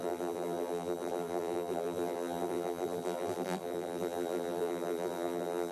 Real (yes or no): no